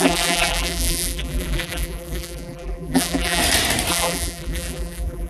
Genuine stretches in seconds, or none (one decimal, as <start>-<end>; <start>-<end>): 3.4-3.9